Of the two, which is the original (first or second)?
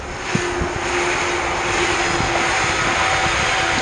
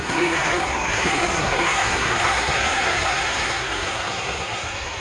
first